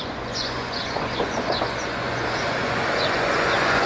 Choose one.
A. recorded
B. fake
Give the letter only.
B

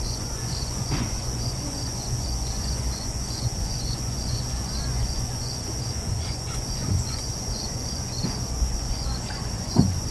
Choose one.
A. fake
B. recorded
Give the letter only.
A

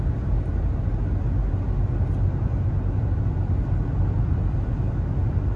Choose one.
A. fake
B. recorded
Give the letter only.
B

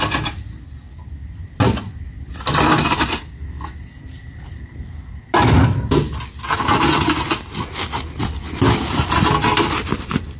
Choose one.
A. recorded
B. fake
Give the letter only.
A